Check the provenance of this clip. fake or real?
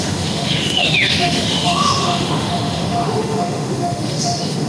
fake